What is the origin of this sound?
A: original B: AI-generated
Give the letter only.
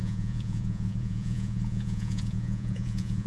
B